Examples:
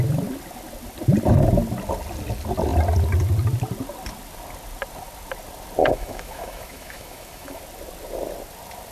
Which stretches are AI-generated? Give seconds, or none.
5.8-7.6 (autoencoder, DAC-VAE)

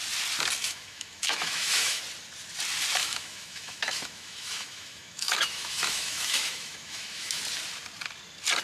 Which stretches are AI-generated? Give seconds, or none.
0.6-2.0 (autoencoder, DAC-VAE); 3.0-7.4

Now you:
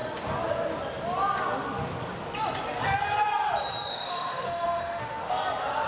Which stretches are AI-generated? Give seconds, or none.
3.9-5.3 (autoencoder, DAC-VAE)

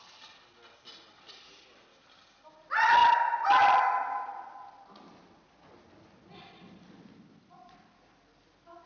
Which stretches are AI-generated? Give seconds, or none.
none

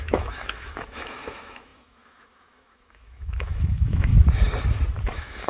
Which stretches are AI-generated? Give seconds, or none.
0.0-4.1 (autoencoder, DAC-VAE); 5.1-5.5